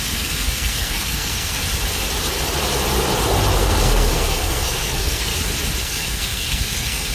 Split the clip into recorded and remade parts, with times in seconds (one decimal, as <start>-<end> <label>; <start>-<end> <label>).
0.0-1.6 remade; 1.6-3.6 recorded; 3.6-5.3 remade; 5.3-5.8 recorded; 5.8-7.1 remade